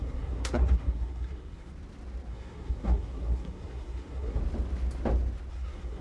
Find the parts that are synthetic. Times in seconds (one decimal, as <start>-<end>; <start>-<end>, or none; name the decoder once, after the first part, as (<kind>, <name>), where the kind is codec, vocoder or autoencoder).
0.0-1.7 (codec, SNAC); 2.3-4.4; 5.5-6.0